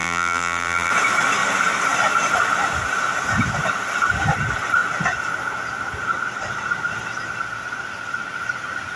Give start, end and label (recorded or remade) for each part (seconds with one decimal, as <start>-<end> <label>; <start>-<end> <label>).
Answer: 0.0-0.9 remade; 0.9-9.0 recorded